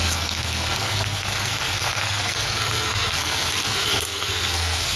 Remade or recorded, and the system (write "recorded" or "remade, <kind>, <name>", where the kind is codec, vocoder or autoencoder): remade, codec, SNAC